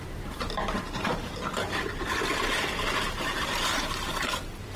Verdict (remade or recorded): recorded